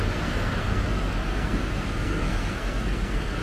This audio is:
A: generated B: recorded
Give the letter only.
A